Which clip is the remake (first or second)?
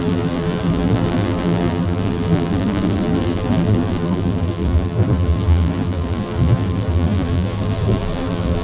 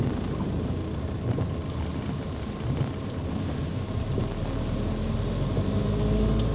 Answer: first